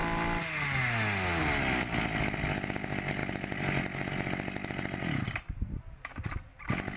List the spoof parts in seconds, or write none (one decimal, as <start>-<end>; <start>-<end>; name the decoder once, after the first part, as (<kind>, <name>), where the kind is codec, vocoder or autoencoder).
3.2-3.8 (vocoder, BigVGAN v2)